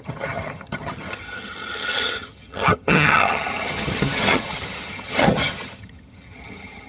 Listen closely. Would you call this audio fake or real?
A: fake